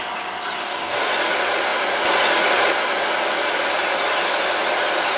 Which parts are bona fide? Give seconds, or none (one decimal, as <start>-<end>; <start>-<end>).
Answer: 0.0-0.6; 1.1-5.2

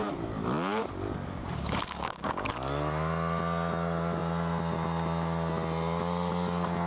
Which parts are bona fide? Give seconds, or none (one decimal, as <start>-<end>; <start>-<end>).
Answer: 0.0-1.4; 2.5-6.9

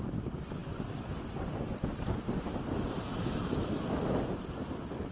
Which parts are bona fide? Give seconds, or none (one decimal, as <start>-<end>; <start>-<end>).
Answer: 0.0-5.1

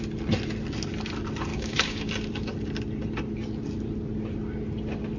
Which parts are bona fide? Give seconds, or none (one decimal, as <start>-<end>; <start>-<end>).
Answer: 0.0-1.5; 2.1-5.2

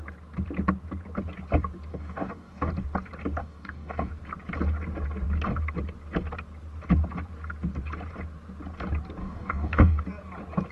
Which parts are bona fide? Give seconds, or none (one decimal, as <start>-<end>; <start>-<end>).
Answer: 0.0-1.9; 2.7-3.4; 4.1-9.2; 10.0-10.7

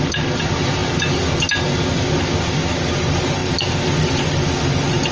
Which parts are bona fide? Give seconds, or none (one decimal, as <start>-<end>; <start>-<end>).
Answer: 0.0-5.1

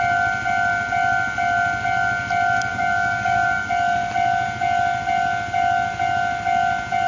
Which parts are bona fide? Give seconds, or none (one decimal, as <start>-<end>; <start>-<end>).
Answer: 0.0-2.7; 3.7-7.1

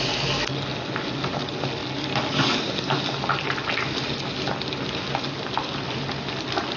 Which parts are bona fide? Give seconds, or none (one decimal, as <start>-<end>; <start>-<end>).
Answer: 0.0-6.8